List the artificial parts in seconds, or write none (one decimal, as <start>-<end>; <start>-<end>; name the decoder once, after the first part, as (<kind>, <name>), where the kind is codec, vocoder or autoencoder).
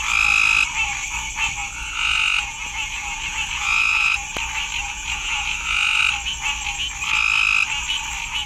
1.6-4.2 (vocoder, Vocos); 4.8-6.0